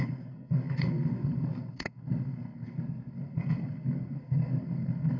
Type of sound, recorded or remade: remade